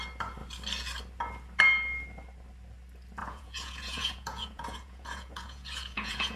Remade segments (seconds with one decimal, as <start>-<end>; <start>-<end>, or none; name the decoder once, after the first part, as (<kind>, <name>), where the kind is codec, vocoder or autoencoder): 3.2-6.4 (vocoder, Vocos)